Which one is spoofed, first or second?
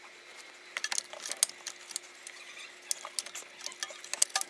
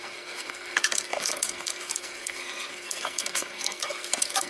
second